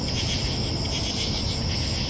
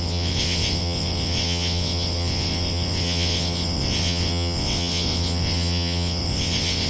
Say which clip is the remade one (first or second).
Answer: second